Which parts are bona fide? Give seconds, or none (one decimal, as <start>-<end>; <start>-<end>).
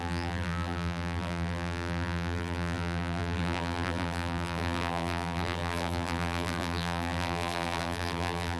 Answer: none